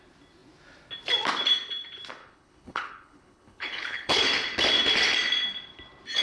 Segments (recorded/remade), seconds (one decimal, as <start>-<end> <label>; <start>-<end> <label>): 0.0-2.2 recorded; 2.2-4.2 remade; 4.2-6.2 recorded